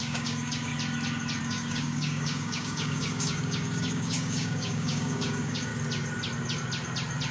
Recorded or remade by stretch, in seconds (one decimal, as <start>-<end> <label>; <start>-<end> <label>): 0.0-0.7 remade; 0.7-1.4 recorded; 1.4-5.7 remade; 5.7-7.3 recorded